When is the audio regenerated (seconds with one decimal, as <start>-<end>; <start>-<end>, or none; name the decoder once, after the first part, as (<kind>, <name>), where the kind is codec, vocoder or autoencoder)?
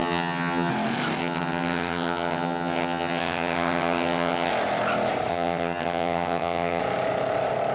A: 0.0-0.7 (vocoder, HiFi-GAN); 1.2-4.5; 5.3-6.8